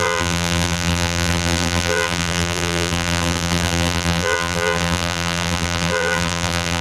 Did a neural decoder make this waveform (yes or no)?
yes